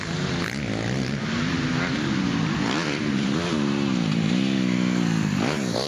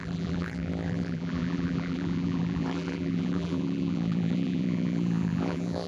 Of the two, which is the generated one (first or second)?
second